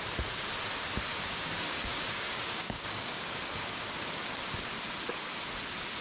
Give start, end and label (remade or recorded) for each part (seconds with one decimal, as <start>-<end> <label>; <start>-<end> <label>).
0.0-1.1 recorded; 1.1-4.7 remade; 4.7-6.0 recorded